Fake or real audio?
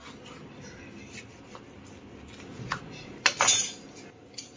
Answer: real